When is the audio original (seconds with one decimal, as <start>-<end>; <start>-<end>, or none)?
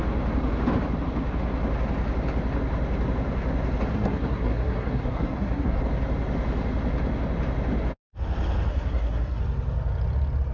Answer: 0.0-3.9; 5.8-8.7; 9.4-10.5